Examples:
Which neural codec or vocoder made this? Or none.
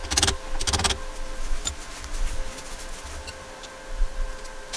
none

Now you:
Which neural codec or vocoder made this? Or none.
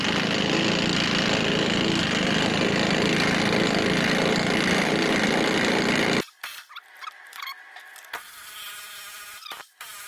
none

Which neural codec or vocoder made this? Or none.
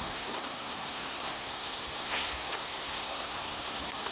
codec, SNAC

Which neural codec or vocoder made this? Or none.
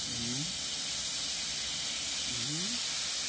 none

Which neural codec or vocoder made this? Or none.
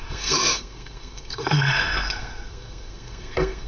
codec, SNAC